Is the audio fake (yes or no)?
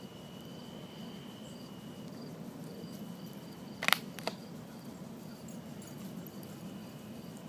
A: no